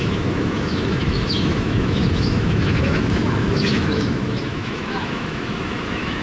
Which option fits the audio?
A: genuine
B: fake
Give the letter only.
B